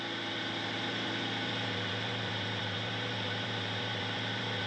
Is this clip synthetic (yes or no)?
yes